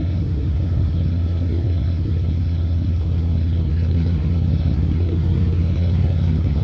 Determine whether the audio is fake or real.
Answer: fake